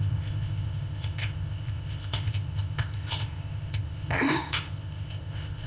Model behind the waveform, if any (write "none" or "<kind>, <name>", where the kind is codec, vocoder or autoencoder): codec, ZipCodec